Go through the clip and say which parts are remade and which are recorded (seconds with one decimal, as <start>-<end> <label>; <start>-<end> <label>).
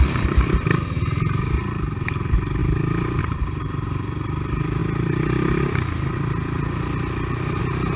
0.0-2.6 remade; 2.6-3.2 recorded; 3.2-4.8 remade; 4.8-7.6 recorded; 7.6-8.0 remade